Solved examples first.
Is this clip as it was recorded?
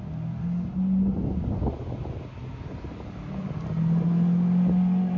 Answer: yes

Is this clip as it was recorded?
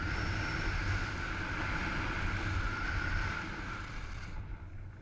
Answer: yes